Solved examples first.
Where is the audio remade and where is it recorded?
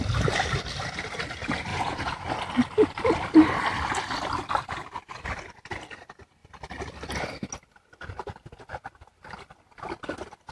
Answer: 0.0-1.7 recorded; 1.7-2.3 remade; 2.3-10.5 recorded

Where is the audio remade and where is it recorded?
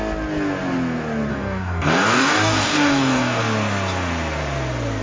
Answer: 0.0-1.3 recorded; 1.3-3.4 remade; 3.4-5.0 recorded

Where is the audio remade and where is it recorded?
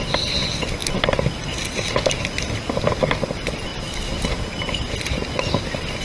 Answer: 0.0-6.0 recorded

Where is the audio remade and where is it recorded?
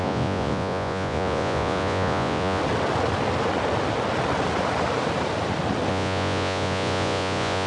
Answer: 0.0-2.6 remade; 2.6-5.9 recorded; 5.9-7.7 remade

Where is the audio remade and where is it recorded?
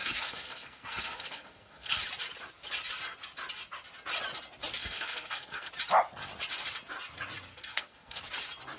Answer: 0.0-2.0 remade; 2.0-4.8 recorded; 4.8-5.7 remade; 5.7-7.5 recorded; 7.5-8.2 remade; 8.2-8.8 recorded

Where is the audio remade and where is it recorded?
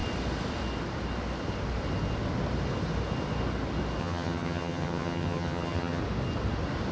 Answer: 0.0-4.0 recorded; 4.0-6.0 remade; 6.0-6.9 recorded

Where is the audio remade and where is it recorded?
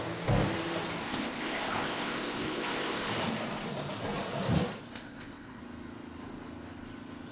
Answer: 0.0-1.0 recorded; 1.0-3.1 remade; 3.1-4.9 recorded; 4.9-5.6 remade; 5.6-7.3 recorded